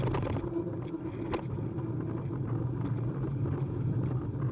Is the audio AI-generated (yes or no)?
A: no